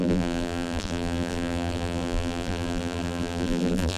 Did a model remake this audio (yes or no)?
yes